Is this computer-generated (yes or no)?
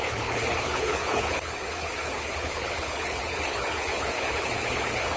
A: yes